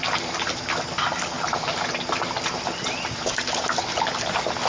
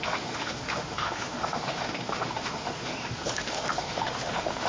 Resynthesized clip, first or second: second